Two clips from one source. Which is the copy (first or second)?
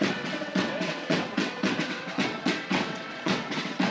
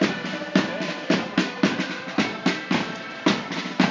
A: first